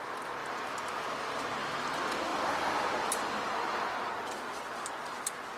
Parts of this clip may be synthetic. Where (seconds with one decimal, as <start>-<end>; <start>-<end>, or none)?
none

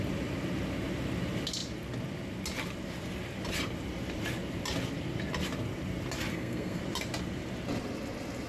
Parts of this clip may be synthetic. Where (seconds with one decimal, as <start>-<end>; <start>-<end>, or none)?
6.3-6.8

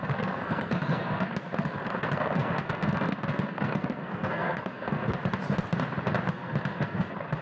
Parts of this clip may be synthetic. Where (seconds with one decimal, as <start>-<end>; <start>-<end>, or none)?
0.0-5.2; 6.3-7.4

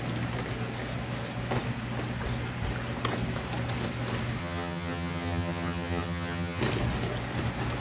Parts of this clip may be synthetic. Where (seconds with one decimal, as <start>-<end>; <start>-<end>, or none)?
4.4-6.6

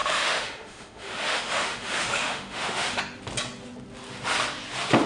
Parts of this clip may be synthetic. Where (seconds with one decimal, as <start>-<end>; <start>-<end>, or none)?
0.0-3.0

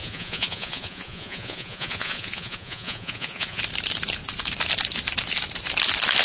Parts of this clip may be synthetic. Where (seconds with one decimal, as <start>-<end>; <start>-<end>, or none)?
0.0-3.6